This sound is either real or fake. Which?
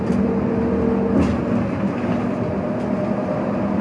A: real